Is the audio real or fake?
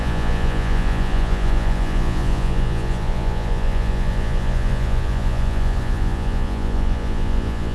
fake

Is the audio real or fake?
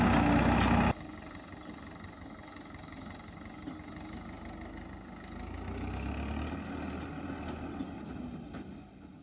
real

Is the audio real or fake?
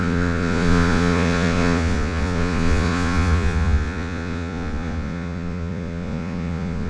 fake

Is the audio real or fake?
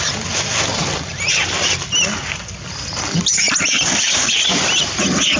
real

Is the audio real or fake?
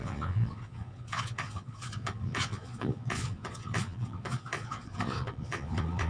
fake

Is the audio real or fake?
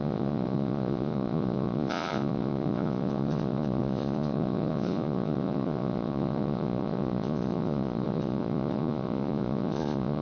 fake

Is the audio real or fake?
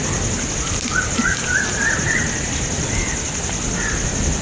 real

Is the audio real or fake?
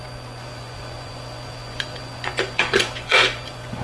fake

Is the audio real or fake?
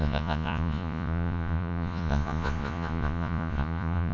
fake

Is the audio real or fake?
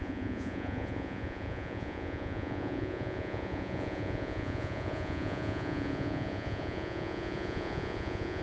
fake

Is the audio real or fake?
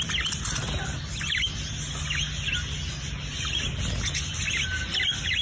real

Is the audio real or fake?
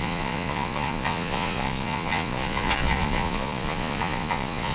fake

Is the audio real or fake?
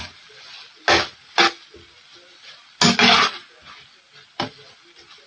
real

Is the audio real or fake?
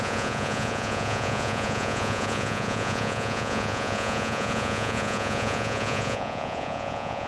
fake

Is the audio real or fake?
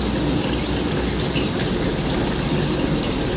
real